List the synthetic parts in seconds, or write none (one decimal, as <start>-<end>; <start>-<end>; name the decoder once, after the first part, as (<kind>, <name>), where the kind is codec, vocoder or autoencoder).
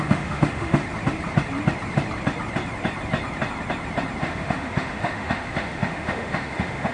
0.0-0.8 (autoencoder, DAC-VAE); 4.2-6.9